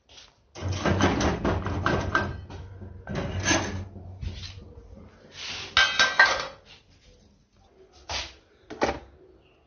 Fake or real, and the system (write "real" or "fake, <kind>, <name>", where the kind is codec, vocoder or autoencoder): real